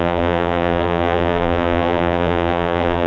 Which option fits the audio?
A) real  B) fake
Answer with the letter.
B